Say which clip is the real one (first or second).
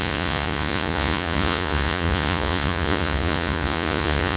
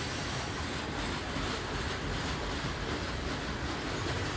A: second